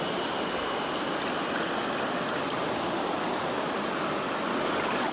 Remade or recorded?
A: recorded